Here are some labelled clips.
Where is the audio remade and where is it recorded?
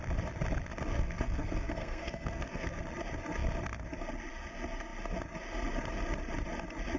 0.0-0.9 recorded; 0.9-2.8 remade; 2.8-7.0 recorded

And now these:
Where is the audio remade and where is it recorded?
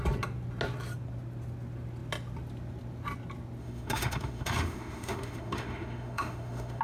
0.0-3.6 recorded; 3.6-6.8 remade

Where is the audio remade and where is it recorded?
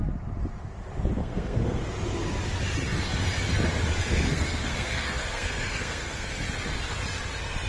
0.0-1.2 recorded; 1.2-1.8 remade; 1.8-4.0 recorded; 4.0-6.3 remade; 6.3-7.7 recorded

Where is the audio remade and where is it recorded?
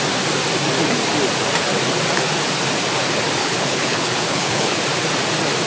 0.0-3.4 recorded; 3.4-4.8 remade; 4.8-5.7 recorded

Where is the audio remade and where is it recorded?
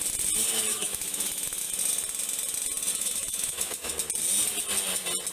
0.0-0.7 recorded; 0.7-1.7 remade; 1.7-2.9 recorded; 2.9-3.9 remade; 3.9-5.3 recorded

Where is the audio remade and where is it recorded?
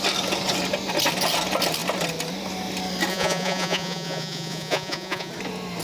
0.0-3.1 recorded; 3.1-5.3 remade; 5.3-5.8 recorded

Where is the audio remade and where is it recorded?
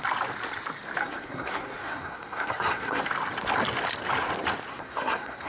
0.0-1.0 recorded; 1.0-3.0 remade; 3.0-4.7 recorded; 4.7-5.5 remade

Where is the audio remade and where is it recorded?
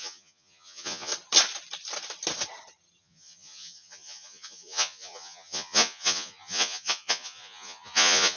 0.0-1.1 remade; 1.1-3.0 recorded; 3.0-8.4 remade